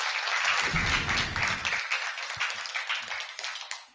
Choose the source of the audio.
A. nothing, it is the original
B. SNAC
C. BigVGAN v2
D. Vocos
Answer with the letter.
A